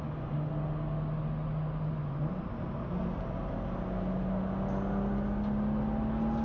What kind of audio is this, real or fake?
real